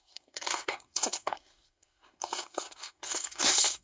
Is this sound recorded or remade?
remade